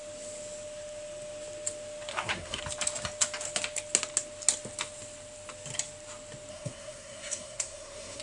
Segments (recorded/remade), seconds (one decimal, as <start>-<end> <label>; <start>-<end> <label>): 0.0-2.1 recorded; 2.1-2.6 remade; 2.6-6.5 recorded; 6.5-8.2 remade

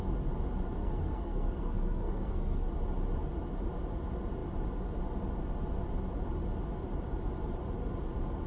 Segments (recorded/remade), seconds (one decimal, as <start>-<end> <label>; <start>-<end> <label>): 0.0-0.8 recorded; 0.8-2.7 remade; 2.7-8.5 recorded

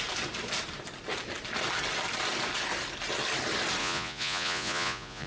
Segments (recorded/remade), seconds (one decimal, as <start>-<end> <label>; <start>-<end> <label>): 0.0-3.8 recorded; 3.8-5.3 remade

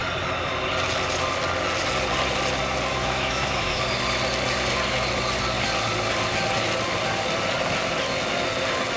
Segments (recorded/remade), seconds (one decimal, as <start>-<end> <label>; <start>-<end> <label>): 0.0-3.0 recorded; 3.0-3.8 remade; 3.8-9.0 recorded

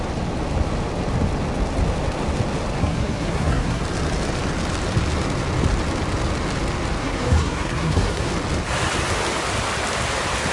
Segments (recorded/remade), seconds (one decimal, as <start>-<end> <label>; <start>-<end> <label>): 0.0-2.8 recorded; 2.8-3.8 remade; 3.8-7.0 recorded; 7.0-8.3 remade; 8.3-10.5 recorded

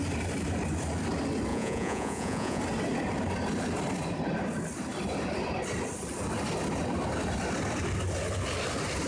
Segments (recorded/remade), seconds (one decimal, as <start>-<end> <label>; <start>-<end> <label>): 0.0-1.5 recorded; 1.5-2.6 remade; 2.6-9.1 recorded